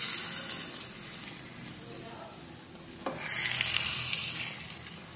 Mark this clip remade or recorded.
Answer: recorded